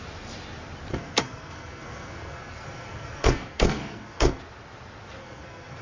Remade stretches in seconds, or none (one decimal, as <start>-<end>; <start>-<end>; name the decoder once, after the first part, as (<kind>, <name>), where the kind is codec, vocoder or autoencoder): 0.9-4.4 (codec, SNAC); 5.2-5.8